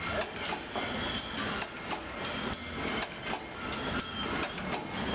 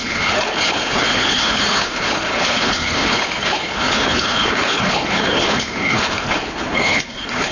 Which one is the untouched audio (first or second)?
first